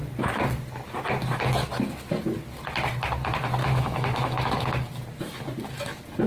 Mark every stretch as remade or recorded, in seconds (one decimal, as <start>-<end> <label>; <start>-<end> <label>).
0.0-3.6 recorded; 3.6-4.7 remade; 4.7-6.3 recorded